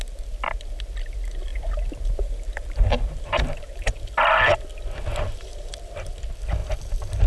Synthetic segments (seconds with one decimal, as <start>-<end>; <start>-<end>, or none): 1.5-3.9; 5.1-6.1